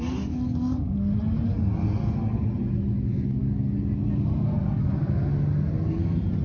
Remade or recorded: recorded